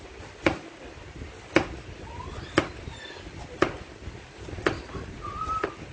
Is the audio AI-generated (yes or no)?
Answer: no